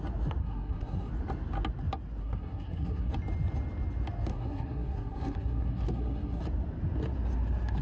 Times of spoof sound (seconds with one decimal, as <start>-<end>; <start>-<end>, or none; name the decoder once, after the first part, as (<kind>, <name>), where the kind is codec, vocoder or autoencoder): 0.4-1.1 (codec, SNAC); 2.2-3.1; 4.3-6.4